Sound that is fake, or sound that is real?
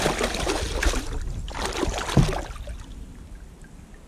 real